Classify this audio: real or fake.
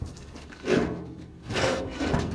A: fake